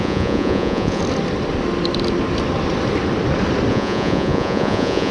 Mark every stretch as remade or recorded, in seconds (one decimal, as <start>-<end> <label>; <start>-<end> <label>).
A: 0.0-1.0 remade; 1.0-3.7 recorded; 3.7-5.1 remade